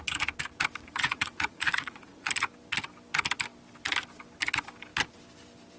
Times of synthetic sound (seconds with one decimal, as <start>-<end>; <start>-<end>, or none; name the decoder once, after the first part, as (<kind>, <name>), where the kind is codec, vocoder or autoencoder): 0.8-2.3 (vocoder, Vocos)